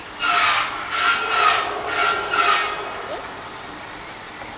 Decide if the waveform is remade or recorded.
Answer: recorded